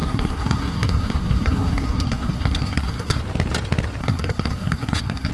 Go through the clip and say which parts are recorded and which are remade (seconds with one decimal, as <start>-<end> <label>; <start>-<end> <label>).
0.0-3.2 remade; 3.2-4.0 recorded; 4.0-5.3 remade

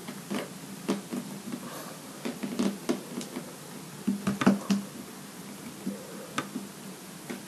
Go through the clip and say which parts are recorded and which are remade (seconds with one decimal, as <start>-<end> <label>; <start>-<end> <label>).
0.0-7.5 recorded

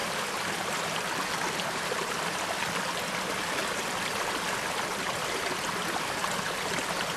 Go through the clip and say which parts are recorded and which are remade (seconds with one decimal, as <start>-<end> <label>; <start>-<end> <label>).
0.0-2.4 remade; 2.4-7.2 recorded

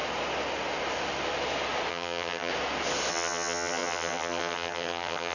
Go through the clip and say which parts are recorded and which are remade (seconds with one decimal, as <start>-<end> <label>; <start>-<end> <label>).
0.0-1.9 recorded; 1.9-2.5 remade; 2.5-3.1 recorded; 3.1-5.3 remade